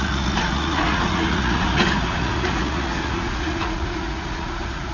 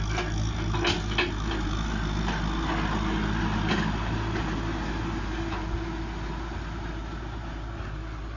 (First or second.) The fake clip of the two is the first